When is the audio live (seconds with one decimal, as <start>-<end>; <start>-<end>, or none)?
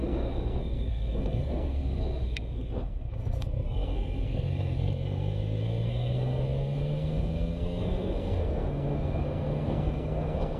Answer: none